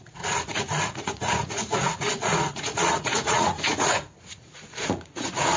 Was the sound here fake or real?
fake